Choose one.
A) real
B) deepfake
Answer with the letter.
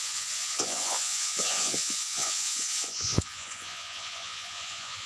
B